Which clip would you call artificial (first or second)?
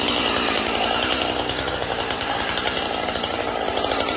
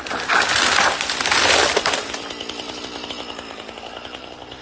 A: first